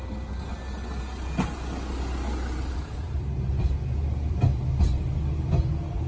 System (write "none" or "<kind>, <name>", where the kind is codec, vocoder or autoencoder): none